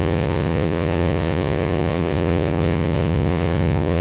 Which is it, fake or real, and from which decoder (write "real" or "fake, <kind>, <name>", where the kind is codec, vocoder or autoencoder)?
fake, vocoder, Vocos